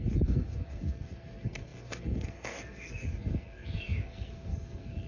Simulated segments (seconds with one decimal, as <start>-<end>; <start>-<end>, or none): 0.0-5.1